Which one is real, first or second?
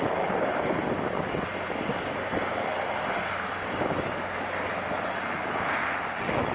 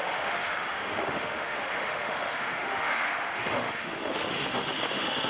first